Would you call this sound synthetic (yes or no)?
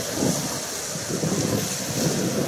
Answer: no